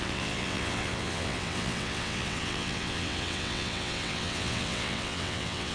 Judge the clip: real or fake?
fake